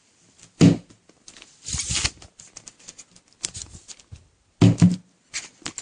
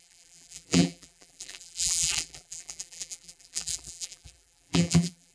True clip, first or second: first